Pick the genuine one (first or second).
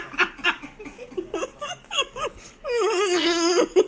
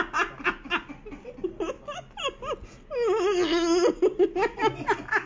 second